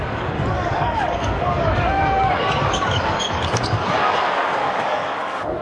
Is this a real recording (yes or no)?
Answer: no